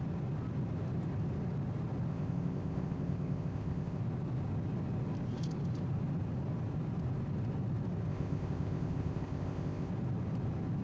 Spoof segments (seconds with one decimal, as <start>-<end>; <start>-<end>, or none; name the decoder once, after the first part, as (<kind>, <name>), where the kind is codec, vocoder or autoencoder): 2.1-4.0 (codec, ZipCodec); 8.1-9.9